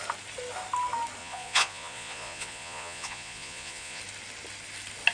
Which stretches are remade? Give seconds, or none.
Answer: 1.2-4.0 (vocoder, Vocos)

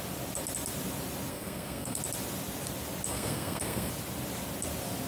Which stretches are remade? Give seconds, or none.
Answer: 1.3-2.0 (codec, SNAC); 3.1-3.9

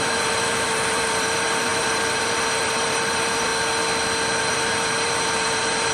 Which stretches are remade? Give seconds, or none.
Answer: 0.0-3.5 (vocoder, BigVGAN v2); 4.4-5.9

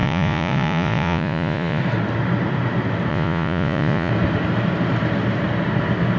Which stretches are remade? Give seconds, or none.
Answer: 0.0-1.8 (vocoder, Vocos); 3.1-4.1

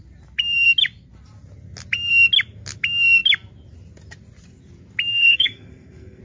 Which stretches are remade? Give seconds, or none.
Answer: 5.1-6.2 (codec, SNAC)

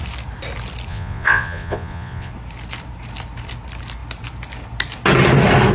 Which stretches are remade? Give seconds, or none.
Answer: 0.9-2.3 (vocoder, Vocos)

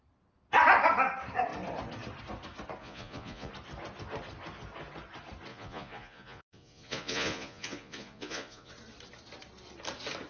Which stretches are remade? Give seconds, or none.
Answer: 2.8-3.5 (vocoder, Vocos); 5.5-8.7